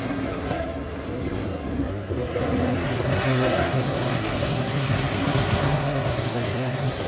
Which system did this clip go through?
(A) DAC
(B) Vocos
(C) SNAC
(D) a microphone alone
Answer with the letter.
C